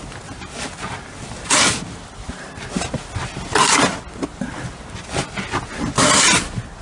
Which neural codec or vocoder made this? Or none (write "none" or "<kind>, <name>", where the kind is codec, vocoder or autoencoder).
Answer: none